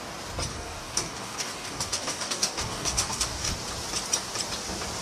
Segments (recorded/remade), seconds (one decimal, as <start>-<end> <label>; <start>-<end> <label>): 0.0-0.5 recorded; 0.5-3.5 remade; 3.5-5.0 recorded